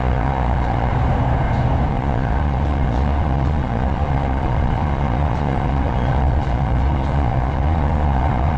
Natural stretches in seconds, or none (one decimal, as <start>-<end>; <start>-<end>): 0.9-1.9